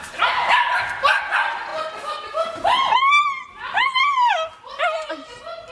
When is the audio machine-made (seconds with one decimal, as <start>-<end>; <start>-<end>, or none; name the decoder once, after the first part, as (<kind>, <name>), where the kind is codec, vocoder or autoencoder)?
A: none